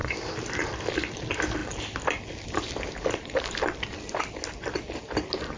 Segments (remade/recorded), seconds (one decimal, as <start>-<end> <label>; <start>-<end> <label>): 0.0-5.6 recorded